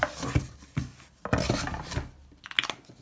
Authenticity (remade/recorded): recorded